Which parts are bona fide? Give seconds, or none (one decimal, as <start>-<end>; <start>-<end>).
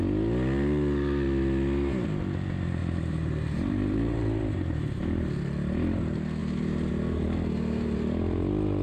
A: 0.0-2.8; 5.3-6.4; 6.9-8.8